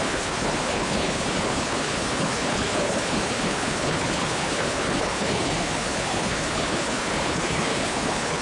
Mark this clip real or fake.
fake